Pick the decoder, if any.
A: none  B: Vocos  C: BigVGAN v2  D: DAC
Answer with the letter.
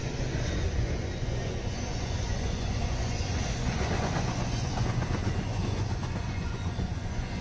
B